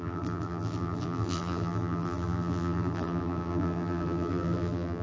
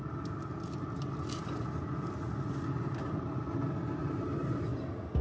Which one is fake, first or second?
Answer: first